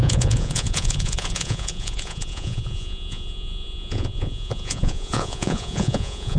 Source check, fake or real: fake